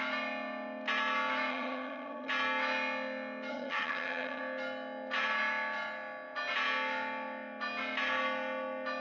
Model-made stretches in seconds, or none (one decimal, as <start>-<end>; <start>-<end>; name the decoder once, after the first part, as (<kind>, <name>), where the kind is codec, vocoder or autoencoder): 1.5-2.3 (vocoder, HiFi-GAN); 3.5-4.4